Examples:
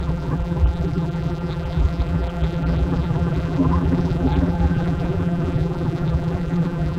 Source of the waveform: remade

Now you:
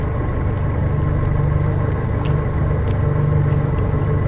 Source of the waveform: recorded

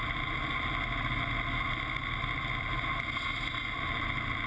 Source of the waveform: recorded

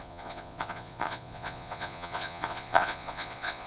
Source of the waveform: remade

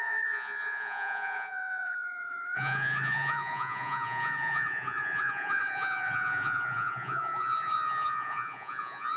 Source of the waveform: remade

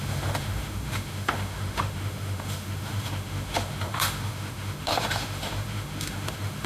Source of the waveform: remade